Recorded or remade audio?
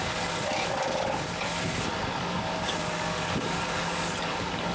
remade